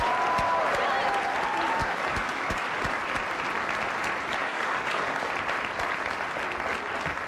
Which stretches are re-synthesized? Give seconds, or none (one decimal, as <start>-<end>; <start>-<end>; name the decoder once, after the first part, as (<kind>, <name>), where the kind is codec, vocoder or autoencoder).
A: 1.8-3.0 (codec, DAC); 4.4-5.2